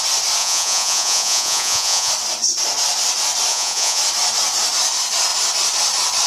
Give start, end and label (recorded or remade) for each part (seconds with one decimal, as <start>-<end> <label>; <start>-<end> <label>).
0.0-0.4 recorded; 0.4-2.1 remade; 2.1-3.5 recorded; 3.5-4.0 remade; 4.0-6.3 recorded